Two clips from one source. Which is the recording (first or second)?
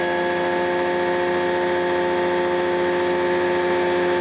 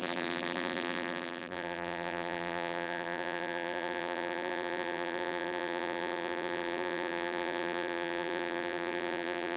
first